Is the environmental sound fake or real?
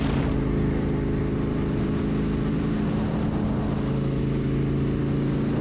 real